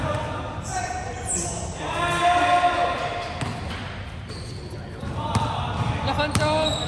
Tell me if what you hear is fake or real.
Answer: real